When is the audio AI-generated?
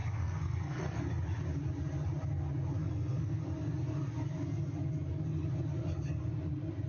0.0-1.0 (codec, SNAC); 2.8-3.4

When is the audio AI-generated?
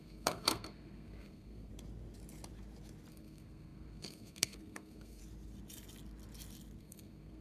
0.0-1.7 (codec, SNAC); 3.1-5.2; 6.8-7.4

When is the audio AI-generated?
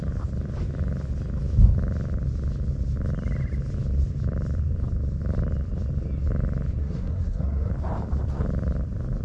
6.8-7.7 (codec, SNAC)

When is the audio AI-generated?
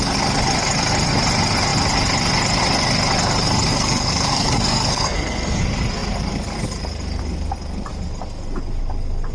3.7-5.6 (codec, SNAC)